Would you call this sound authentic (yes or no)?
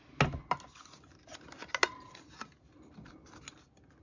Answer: yes